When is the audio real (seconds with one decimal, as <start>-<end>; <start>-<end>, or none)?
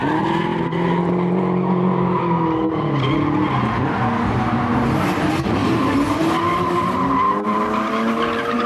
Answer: 0.0-8.7